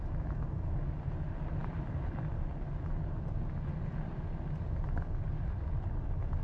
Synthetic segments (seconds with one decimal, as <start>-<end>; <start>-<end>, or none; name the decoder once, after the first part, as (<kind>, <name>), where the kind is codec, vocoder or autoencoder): none